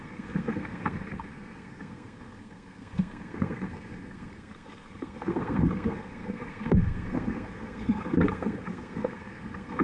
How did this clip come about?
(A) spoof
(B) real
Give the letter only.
A